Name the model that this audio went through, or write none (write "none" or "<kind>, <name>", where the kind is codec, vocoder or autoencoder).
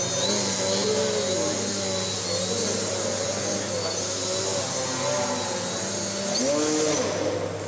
none